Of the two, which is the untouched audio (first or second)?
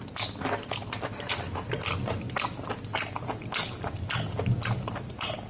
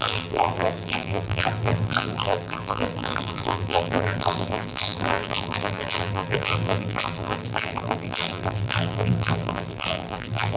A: first